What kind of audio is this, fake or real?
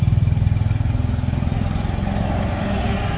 real